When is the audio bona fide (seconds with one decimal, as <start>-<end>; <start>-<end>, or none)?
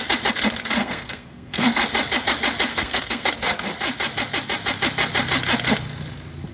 0.0-0.8; 1.8-2.7; 3.3-6.5